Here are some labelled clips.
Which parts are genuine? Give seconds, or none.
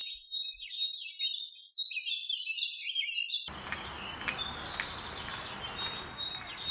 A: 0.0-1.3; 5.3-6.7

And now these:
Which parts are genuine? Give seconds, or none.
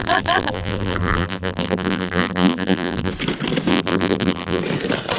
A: 3.1-3.7; 4.6-5.2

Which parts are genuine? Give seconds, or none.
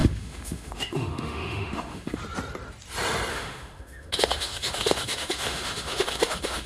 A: 2.2-3.3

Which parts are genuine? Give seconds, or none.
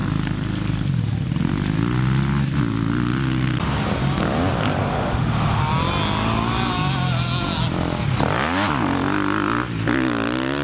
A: 0.0-4.8; 5.6-10.6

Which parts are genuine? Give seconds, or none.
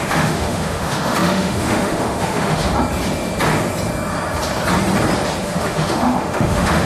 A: 2.7-5.4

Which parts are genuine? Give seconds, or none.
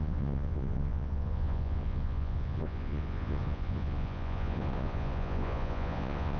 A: none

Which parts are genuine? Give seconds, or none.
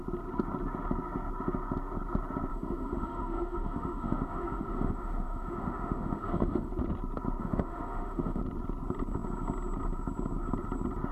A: 0.0-2.5; 6.7-7.4; 8.4-11.1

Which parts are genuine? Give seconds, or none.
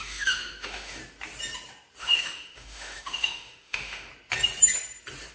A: 1.0-2.0; 4.1-5.3